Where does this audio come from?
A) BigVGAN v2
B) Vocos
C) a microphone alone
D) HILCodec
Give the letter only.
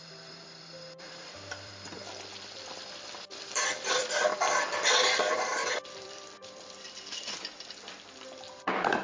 A